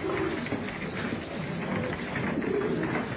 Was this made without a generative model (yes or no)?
yes